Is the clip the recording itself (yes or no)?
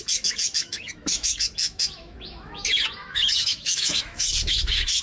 no